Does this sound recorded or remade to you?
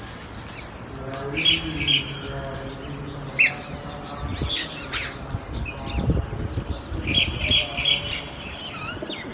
recorded